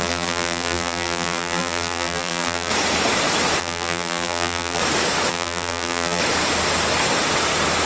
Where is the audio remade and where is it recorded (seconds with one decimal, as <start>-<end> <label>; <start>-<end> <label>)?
0.0-2.7 remade; 2.7-3.6 recorded; 3.6-4.8 remade; 4.8-5.3 recorded; 5.3-6.2 remade; 6.2-7.9 recorded